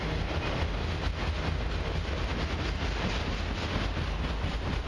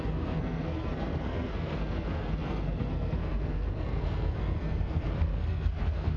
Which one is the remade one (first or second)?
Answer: second